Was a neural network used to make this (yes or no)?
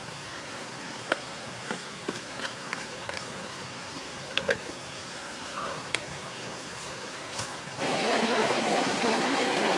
yes